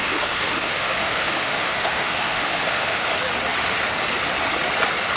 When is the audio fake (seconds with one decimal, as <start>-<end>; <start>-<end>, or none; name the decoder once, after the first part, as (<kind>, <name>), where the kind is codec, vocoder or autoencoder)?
0.0-3.1 (autoencoder, DAC-VAE)